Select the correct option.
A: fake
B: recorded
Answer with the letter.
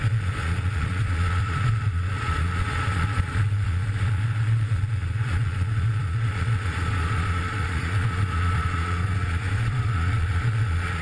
A